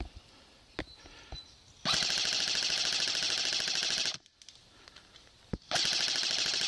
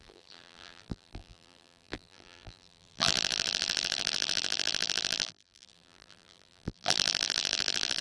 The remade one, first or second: second